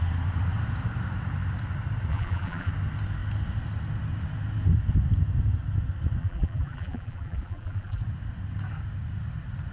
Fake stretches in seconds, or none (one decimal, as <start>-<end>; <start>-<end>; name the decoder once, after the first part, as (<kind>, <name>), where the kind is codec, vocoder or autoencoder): 2.1-2.7 (vocoder, BigVGAN v2); 6.2-8.0